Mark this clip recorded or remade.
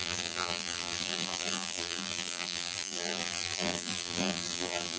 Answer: remade